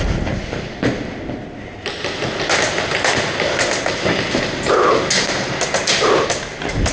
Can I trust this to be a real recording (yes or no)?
yes